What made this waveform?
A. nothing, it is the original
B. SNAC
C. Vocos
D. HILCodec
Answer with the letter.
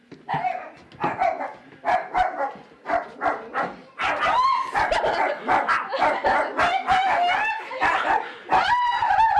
A